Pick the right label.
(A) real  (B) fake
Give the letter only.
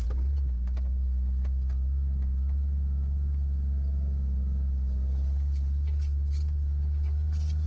A